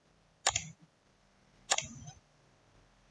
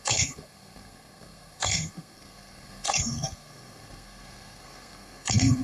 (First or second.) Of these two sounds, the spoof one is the second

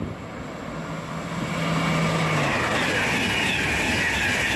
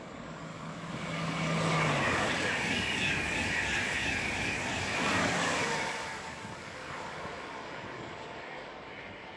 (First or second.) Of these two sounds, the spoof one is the second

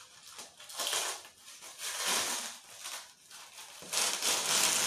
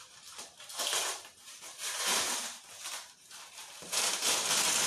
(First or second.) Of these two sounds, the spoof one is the second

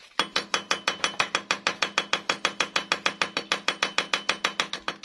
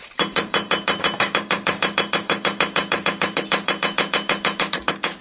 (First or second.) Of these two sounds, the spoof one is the second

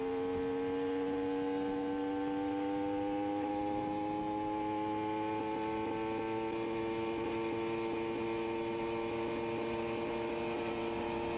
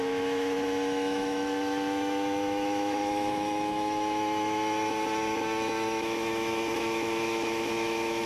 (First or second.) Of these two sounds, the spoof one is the second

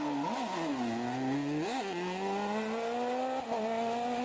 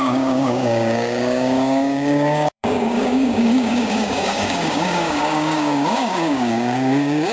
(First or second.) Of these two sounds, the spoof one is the second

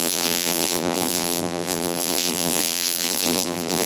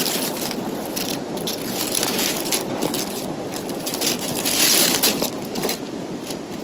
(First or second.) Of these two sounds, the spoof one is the first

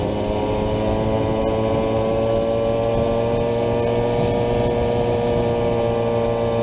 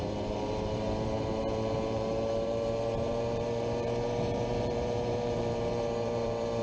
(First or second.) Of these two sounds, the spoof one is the second